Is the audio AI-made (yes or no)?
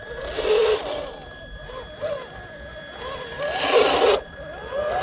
no